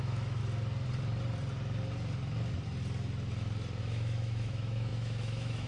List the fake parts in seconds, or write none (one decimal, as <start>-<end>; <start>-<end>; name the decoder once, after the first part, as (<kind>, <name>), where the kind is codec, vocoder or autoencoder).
0.0-0.4 (autoencoder, DAC-VAE); 3.8-5.7